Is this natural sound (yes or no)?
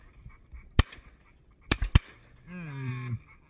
yes